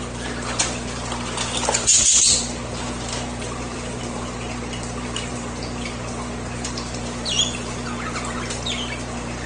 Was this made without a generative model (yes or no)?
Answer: no